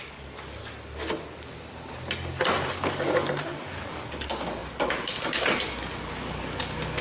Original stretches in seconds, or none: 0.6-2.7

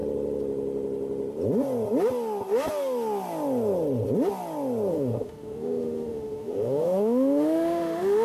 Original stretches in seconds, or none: 0.0-4.9